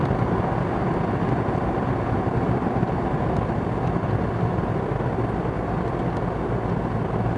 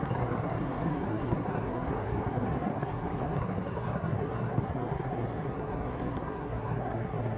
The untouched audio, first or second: first